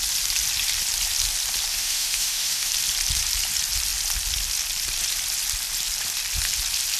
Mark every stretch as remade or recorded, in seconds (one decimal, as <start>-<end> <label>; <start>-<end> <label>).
0.0-1.7 recorded; 1.7-2.7 remade; 2.7-7.0 recorded